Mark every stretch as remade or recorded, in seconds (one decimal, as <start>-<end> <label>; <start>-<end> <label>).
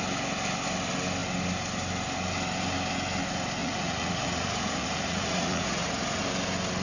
0.0-3.6 recorded; 3.6-6.2 remade; 6.2-6.8 recorded